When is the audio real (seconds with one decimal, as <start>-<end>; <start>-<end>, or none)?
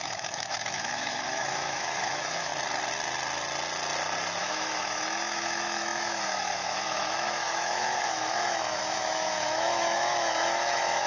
2.5-4.4